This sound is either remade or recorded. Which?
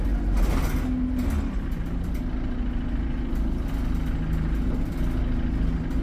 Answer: recorded